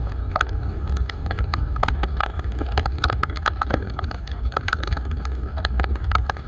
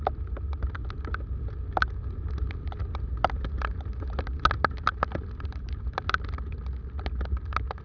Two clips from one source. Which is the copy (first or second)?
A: first